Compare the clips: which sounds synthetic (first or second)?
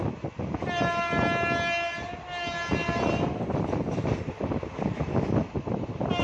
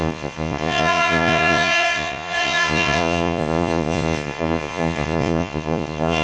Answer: second